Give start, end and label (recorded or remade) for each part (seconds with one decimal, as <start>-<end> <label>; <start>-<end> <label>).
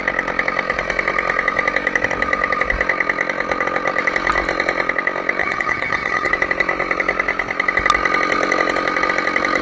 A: 0.0-5.4 recorded; 5.4-6.3 remade; 6.3-9.6 recorded